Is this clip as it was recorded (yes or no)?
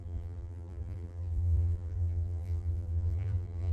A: no